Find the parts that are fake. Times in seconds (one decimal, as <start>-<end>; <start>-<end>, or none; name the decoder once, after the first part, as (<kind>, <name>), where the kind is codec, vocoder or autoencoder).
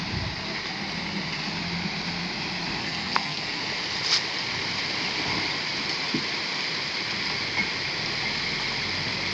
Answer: 2.8-3.6 (codec, SNAC)